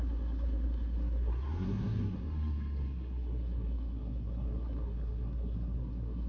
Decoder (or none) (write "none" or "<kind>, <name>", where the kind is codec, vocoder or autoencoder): codec, SNAC